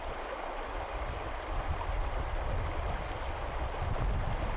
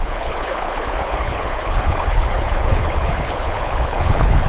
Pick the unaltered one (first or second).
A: first